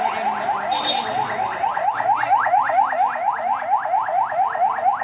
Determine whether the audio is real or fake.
real